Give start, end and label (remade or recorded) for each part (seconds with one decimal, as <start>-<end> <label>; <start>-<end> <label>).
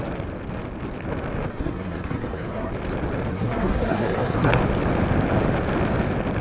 0.0-1.5 recorded; 1.5-2.7 remade; 2.7-3.3 recorded; 3.3-4.6 remade; 4.6-6.4 recorded